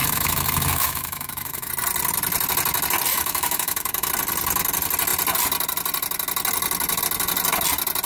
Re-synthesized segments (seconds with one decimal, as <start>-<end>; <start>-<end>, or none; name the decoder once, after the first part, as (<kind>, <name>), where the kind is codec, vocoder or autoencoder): 0.0-1.7 (autoencoder, DAC-VAE); 3.1-4.1